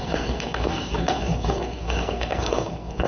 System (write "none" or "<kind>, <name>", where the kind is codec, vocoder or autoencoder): codec, SNAC